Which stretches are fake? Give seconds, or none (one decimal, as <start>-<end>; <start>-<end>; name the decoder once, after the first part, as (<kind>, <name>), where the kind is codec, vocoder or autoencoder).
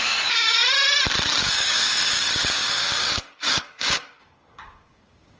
0.0-0.6 (codec, DAC); 1.4-5.4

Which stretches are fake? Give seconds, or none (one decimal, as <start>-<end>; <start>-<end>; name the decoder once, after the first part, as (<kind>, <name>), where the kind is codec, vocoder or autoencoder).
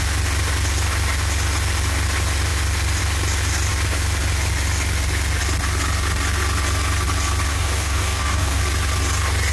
7.5-8.6 (codec, DAC)